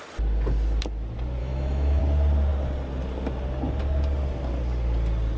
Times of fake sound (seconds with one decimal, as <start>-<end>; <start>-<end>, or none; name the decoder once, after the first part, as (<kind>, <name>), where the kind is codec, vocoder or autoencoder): 1.4-2.0 (autoencoder, DAC-VAE)